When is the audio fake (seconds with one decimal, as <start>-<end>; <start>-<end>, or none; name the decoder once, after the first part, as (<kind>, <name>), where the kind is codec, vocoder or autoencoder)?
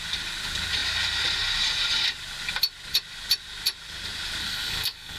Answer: 4.4-5.2 (codec, SNAC)